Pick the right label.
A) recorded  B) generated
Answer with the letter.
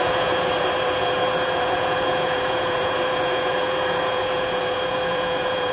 B